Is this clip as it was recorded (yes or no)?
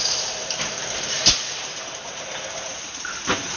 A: no